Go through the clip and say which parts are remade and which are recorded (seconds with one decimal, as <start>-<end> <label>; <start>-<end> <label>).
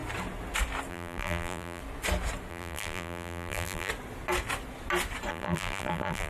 0.0-0.9 recorded; 0.9-1.8 remade; 1.8-2.5 recorded; 2.5-3.9 remade; 3.9-5.3 recorded; 5.3-6.3 remade